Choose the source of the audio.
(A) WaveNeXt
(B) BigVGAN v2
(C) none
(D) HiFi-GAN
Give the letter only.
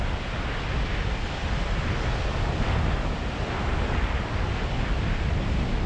C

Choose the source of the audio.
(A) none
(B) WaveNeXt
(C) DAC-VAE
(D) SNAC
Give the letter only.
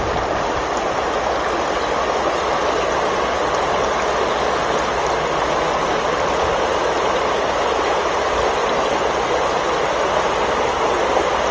A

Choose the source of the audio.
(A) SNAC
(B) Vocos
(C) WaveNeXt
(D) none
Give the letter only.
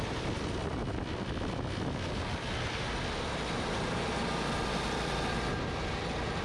D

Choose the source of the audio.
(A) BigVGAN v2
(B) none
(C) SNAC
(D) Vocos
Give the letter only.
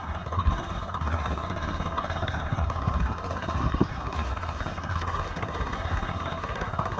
C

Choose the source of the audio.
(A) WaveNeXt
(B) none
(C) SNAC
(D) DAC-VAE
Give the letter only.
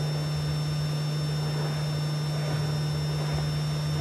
B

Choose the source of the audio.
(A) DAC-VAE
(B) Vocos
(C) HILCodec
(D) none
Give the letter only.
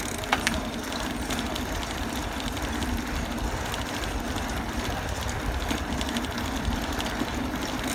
D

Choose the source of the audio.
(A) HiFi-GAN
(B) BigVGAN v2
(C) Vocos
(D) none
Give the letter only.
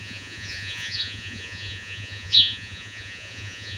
C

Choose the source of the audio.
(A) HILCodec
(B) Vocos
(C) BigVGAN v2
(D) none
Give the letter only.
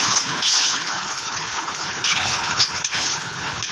A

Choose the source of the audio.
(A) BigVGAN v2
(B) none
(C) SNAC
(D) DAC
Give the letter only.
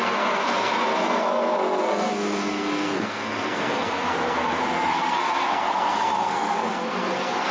C